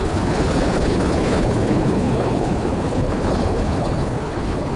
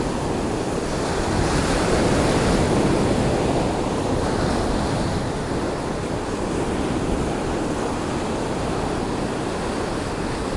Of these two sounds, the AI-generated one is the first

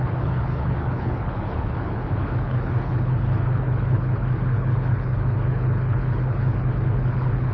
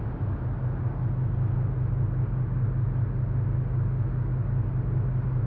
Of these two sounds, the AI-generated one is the first